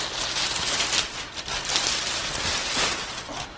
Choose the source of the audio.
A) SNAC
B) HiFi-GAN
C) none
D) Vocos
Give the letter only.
C